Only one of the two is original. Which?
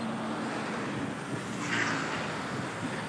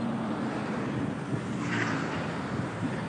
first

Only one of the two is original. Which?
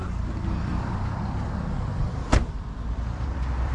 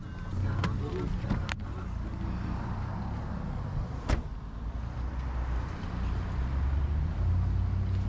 second